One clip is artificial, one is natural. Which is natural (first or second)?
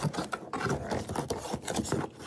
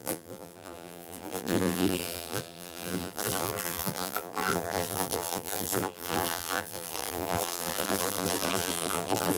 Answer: first